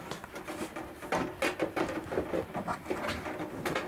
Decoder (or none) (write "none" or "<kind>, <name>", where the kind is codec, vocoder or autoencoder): none